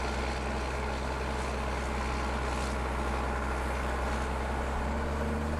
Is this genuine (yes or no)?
yes